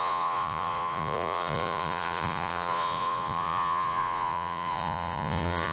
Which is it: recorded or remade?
remade